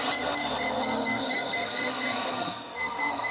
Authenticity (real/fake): fake